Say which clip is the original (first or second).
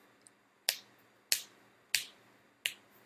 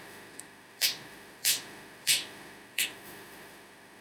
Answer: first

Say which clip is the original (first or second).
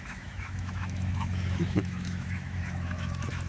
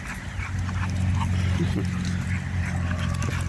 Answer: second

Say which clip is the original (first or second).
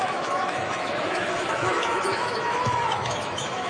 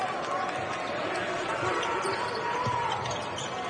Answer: second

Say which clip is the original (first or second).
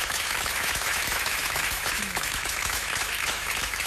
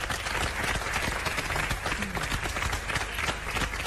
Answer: second